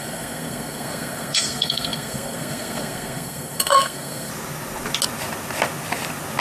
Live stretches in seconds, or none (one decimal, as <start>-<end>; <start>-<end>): 4.3-6.4